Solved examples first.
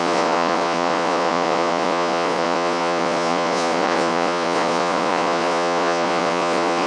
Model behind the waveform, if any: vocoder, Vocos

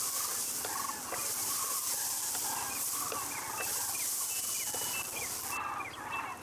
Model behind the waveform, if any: none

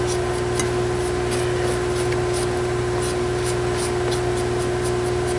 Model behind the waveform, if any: none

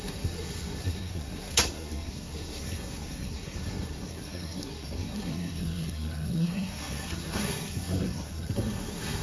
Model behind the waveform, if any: codec, SNAC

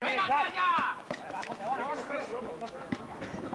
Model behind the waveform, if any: autoencoder, DAC-VAE